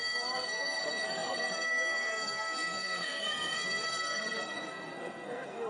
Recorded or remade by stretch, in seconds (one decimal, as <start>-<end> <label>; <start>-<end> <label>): 0.0-5.7 remade